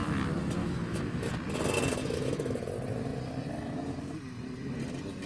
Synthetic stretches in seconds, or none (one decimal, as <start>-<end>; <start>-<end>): 0.6-1.3; 2.0-2.7